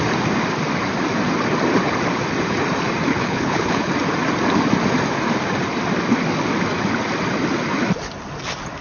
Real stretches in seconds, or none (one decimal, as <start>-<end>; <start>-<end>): 0.0-3.1; 3.9-8.8